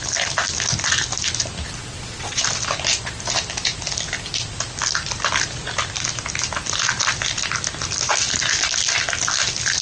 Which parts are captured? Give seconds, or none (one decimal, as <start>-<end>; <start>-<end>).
0.0-1.9; 2.4-9.8